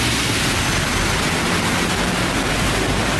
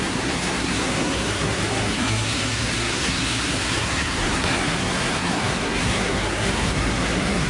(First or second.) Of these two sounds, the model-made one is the second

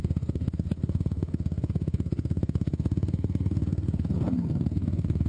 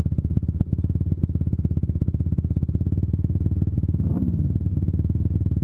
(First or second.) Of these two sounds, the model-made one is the first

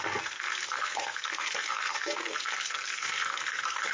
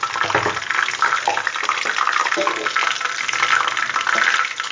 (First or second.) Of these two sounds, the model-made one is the first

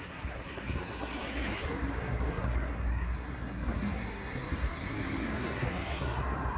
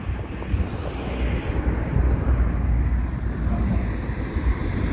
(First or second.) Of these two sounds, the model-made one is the first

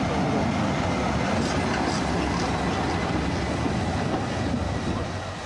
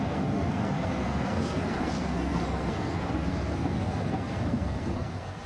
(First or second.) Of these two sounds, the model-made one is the second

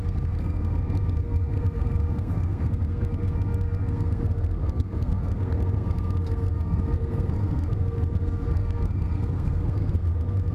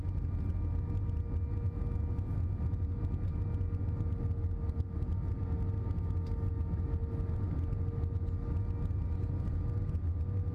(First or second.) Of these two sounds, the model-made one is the first